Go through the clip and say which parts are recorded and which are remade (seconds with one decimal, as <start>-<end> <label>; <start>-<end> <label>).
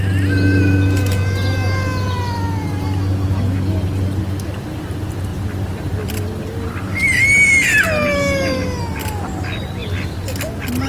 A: 0.0-10.9 recorded